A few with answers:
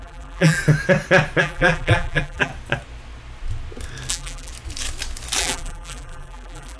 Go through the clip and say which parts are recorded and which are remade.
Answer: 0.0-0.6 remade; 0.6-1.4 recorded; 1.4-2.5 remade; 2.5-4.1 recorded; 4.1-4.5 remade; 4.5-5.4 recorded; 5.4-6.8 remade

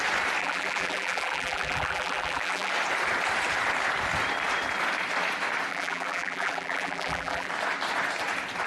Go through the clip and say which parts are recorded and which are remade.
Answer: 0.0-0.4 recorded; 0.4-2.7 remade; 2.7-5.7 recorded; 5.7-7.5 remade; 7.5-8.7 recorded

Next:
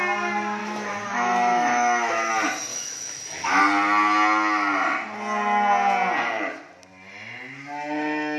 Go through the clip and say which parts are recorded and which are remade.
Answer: 0.0-0.6 recorded; 0.6-2.3 remade; 2.3-2.7 recorded; 2.7-3.6 remade; 3.6-8.4 recorded

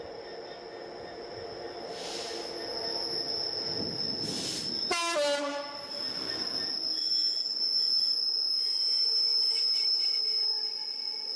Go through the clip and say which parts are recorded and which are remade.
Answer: 0.0-11.4 recorded

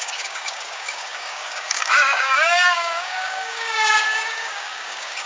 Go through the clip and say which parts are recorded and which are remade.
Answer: 0.0-5.3 remade

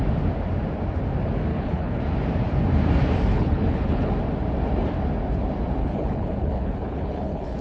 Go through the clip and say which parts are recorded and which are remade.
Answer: 0.0-1.5 recorded; 1.5-2.0 remade; 2.0-3.3 recorded; 3.3-4.1 remade; 4.1-5.8 recorded; 5.8-7.6 remade